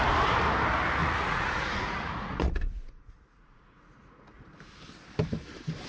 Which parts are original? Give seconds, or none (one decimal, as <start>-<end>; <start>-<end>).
0.0-1.0; 4.5-5.9